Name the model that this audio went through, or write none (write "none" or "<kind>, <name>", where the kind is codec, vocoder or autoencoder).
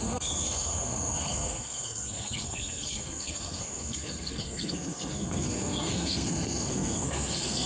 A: codec, SNAC